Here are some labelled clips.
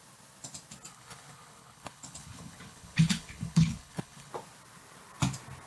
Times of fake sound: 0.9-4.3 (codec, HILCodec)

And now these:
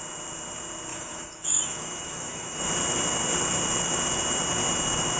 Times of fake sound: 0.9-2.7 (autoencoder, DAC-VAE)

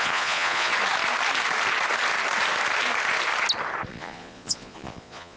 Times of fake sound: 0.0-0.7 (vocoder, Vocos); 3.9-5.4

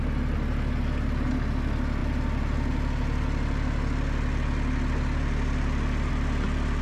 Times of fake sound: none

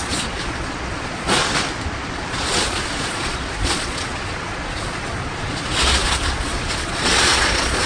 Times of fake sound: 0.0-1.4 (vocoder, Vocos); 2.3-7.9

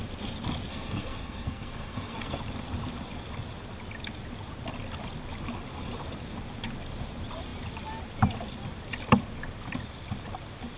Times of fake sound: 0.7-2.4 (codec, SNAC)

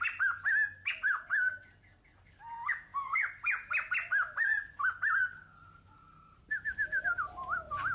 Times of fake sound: none